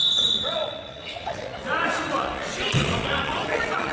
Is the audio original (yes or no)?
no